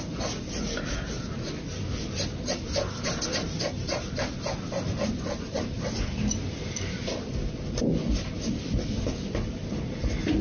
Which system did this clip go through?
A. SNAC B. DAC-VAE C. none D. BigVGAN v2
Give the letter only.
C